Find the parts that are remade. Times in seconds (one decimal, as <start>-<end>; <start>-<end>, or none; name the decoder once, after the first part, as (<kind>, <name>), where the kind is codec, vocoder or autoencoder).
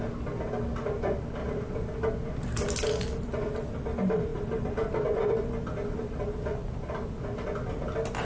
1.4-2.1 (vocoder, BigVGAN v2); 4.3-5.6